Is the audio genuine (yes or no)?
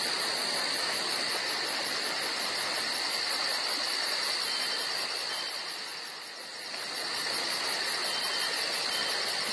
yes